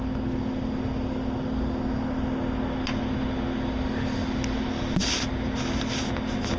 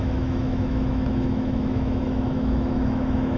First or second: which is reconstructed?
second